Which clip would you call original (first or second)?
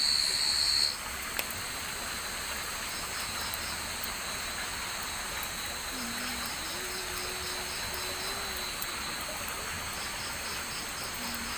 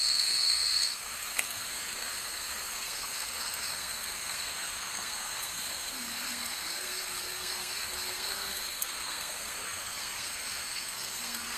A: first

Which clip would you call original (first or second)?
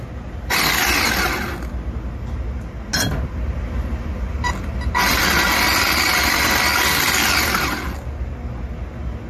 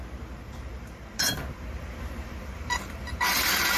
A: first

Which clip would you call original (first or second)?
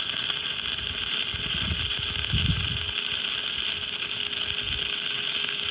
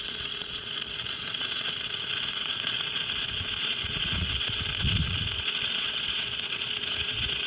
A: first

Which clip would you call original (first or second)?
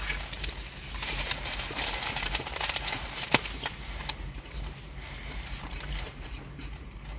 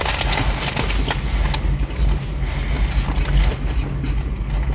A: second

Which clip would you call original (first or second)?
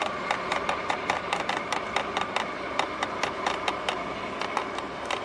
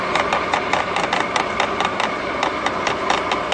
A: second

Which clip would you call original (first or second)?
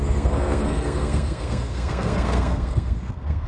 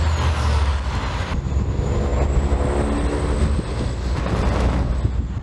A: second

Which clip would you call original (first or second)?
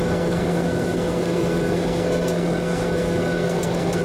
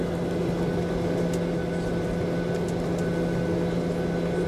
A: second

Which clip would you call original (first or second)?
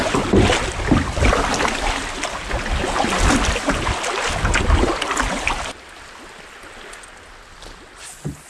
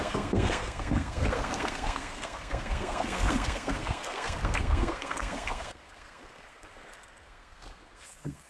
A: first